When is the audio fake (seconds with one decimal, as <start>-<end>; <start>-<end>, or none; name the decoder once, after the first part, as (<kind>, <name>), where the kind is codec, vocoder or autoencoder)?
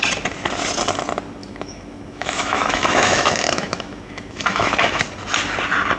1.4-5.0 (autoencoder, DAC-VAE)